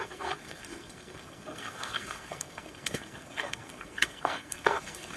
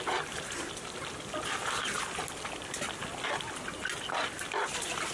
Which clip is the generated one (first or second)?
first